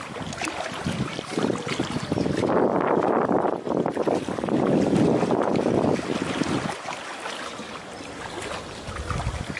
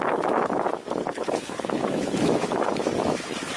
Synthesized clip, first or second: second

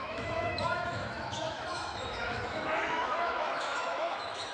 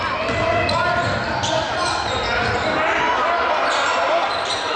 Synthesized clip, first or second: first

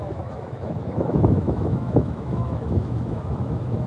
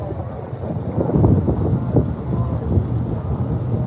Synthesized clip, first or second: first